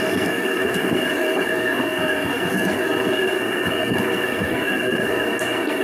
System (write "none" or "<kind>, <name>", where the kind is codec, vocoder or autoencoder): codec, SNAC